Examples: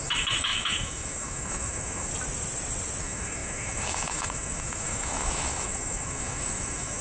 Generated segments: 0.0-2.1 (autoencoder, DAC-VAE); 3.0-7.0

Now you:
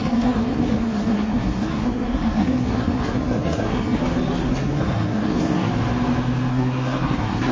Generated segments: 0.0-4.0 (codec, SNAC); 4.5-5.7; 6.5-7.5

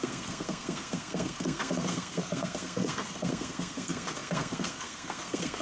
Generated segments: 0.0-5.6 (codec, SNAC)

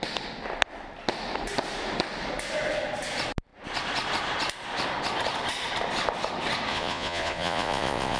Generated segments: 6.7-8.2 (vocoder, Vocos)

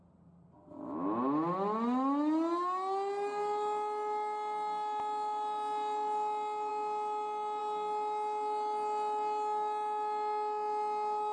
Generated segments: none

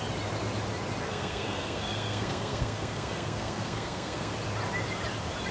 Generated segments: 1.0-4.3 (codec, SNAC)

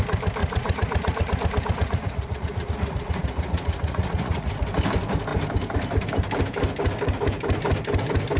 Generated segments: 0.4-4.5 (vocoder, Vocos)